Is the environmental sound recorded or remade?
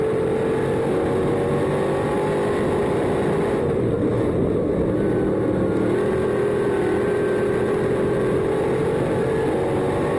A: recorded